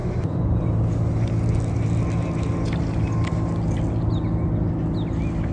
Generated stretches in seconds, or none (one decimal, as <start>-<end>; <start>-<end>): 0.0-0.8